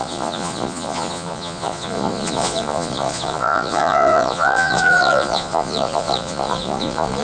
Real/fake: fake